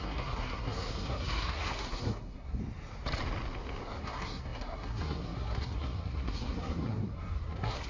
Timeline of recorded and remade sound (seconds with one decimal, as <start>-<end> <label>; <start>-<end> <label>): 0.0-2.6 remade; 2.6-4.0 recorded; 4.0-7.9 remade

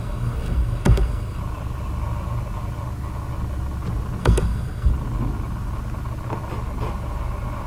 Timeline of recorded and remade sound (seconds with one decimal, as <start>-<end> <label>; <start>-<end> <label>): 0.0-1.4 remade; 1.4-4.2 recorded; 4.2-4.9 remade; 4.9-7.7 recorded

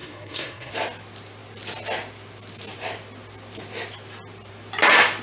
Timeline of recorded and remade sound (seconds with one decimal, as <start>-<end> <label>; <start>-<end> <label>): 0.0-0.7 remade; 0.7-5.2 recorded